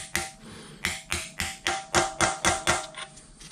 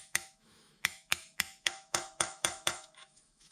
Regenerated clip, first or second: second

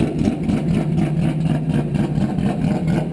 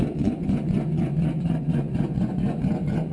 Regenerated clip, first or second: second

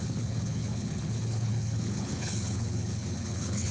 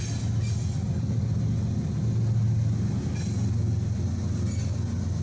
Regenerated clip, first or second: first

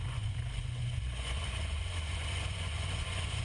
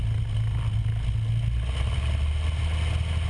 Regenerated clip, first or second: first